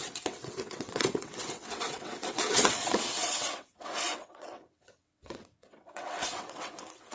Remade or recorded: remade